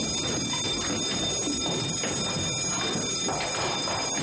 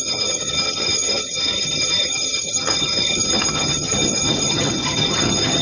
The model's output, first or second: second